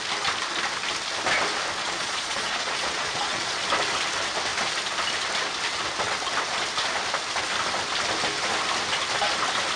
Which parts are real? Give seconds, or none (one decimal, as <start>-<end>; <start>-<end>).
0.0-1.8; 3.6-9.8